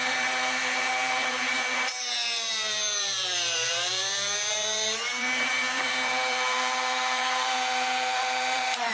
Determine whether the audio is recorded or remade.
remade